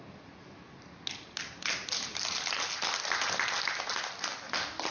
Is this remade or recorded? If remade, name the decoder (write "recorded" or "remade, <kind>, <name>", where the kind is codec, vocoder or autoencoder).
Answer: recorded